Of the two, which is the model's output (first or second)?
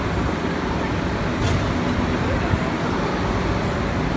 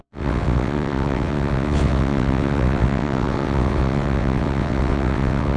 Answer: second